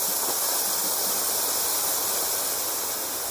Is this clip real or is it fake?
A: real